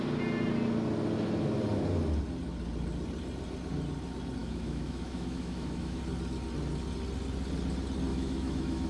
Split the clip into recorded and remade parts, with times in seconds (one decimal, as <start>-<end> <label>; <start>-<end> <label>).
0.0-4.4 recorded; 4.4-6.0 remade; 6.0-8.1 recorded; 8.1-8.9 remade

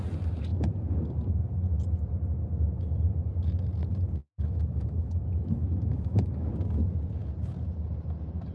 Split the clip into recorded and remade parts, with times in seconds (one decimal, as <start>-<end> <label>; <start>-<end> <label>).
0.0-4.2 recorded; 4.2-6.5 remade; 6.5-8.5 recorded

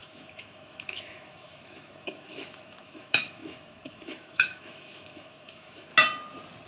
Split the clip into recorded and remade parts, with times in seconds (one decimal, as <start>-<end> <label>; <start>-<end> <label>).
0.0-5.9 remade; 5.9-6.7 recorded

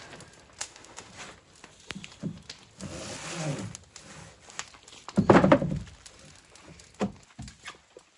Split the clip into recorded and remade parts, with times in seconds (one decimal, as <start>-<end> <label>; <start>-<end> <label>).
0.0-0.6 recorded; 0.6-1.1 remade; 1.1-8.2 recorded

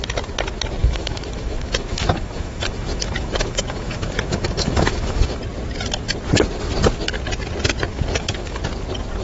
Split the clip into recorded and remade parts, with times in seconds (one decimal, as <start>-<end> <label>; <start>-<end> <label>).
0.0-0.8 recorded; 0.8-5.4 remade; 5.4-7.9 recorded; 7.9-8.6 remade; 8.6-9.2 recorded

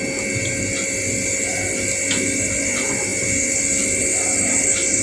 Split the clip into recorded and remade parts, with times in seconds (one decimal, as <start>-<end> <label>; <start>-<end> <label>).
0.0-5.0 recorded

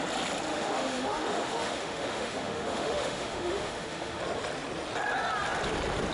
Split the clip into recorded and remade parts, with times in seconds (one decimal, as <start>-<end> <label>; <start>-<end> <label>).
0.0-0.5 recorded; 0.5-4.2 remade; 4.2-6.1 recorded